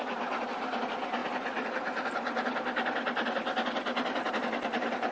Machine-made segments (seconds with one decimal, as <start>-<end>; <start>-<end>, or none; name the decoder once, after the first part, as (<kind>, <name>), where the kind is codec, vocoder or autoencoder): none